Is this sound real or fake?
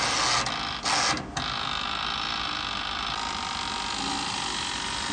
real